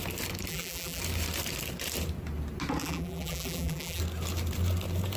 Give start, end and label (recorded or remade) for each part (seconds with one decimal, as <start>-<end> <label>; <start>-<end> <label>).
0.0-0.5 recorded; 0.5-1.0 remade; 1.0-2.8 recorded; 2.8-4.0 remade; 4.0-5.2 recorded